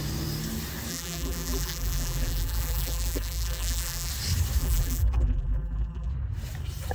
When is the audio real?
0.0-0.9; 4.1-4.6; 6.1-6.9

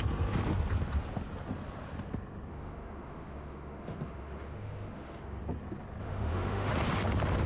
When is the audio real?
0.0-2.5; 5.4-6.0; 6.7-7.5

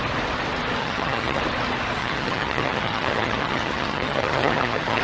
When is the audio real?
0.0-0.8; 1.4-2.0

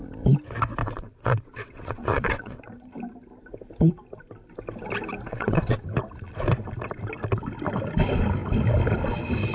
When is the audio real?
0.0-0.8; 2.6-5.3; 5.8-9.5

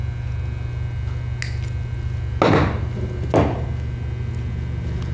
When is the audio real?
0.0-5.1

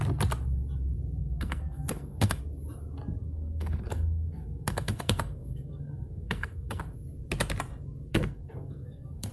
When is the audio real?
0.0-1.2; 2.4-3.2; 6.8-8.1